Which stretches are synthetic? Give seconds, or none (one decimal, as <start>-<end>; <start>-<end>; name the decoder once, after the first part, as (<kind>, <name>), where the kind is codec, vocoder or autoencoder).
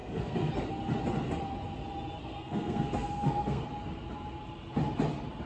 0.0-0.5 (codec, SNAC); 2.2-3.6